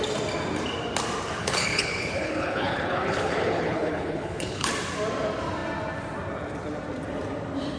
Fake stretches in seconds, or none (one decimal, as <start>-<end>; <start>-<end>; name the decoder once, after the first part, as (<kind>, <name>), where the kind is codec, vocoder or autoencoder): 1.4-4.7 (codec, HILCodec)